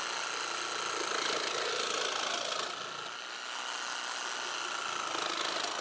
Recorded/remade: recorded